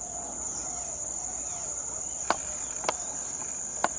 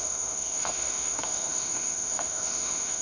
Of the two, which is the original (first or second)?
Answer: first